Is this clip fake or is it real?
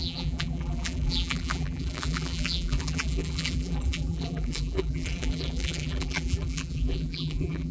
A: fake